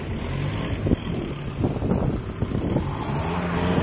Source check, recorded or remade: recorded